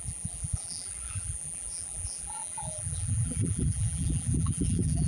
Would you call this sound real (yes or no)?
no